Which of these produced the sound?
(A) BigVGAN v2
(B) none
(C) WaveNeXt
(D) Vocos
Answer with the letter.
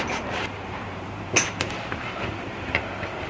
A